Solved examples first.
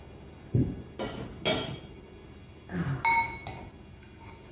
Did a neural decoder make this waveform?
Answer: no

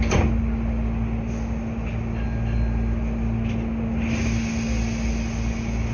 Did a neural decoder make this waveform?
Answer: no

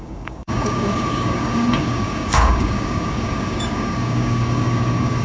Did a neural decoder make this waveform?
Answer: yes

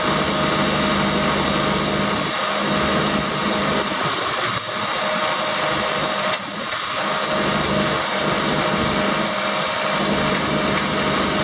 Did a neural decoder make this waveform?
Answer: no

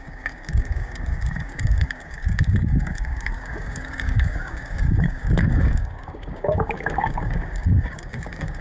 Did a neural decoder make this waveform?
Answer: yes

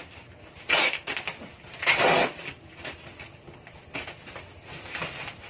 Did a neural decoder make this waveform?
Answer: no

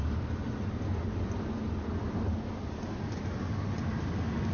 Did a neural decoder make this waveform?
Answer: no